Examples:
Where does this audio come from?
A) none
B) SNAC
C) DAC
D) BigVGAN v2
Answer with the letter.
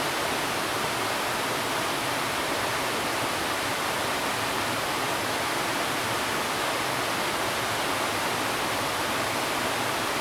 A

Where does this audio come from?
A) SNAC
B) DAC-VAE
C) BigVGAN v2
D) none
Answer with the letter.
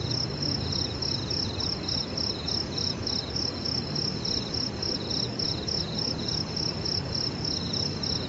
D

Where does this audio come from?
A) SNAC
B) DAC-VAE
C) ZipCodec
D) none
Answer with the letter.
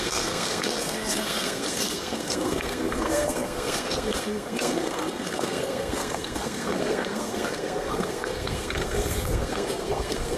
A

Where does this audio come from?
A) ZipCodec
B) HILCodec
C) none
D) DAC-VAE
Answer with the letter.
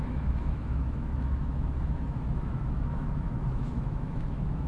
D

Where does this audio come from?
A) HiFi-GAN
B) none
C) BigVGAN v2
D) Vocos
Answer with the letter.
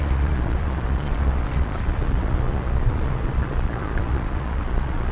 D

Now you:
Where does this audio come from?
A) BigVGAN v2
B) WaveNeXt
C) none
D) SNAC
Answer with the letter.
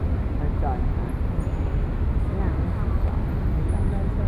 C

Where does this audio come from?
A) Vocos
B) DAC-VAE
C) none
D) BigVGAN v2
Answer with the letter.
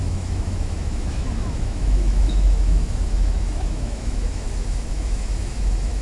B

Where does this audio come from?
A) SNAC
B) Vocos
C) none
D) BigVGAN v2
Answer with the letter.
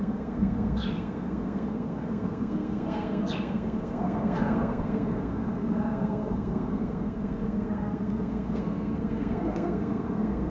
A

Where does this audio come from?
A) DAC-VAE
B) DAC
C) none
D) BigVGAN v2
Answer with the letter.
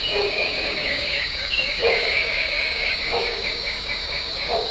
B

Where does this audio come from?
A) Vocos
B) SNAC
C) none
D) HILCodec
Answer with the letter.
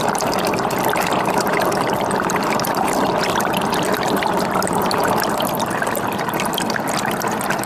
C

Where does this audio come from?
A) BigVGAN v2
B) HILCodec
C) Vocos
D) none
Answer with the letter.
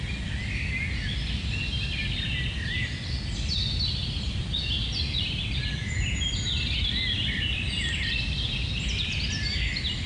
D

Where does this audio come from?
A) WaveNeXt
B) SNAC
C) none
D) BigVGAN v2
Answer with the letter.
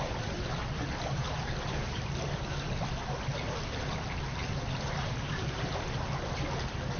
C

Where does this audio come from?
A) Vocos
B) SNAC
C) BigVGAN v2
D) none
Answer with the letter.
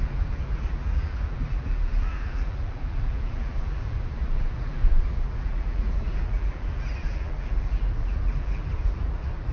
C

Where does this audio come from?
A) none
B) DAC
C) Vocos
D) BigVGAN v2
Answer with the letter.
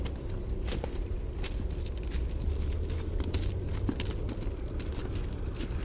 A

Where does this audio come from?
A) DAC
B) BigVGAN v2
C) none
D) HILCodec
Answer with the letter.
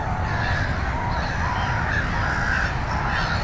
C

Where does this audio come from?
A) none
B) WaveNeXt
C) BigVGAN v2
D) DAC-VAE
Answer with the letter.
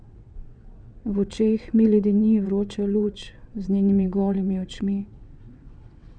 B